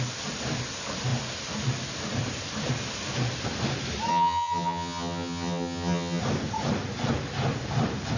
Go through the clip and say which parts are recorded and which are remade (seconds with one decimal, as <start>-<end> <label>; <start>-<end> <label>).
0.0-4.1 recorded; 4.1-6.2 remade; 6.2-8.2 recorded